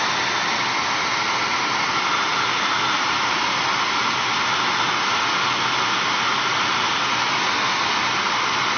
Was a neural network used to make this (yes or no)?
no